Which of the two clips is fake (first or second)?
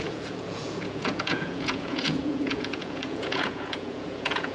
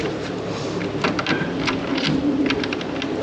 first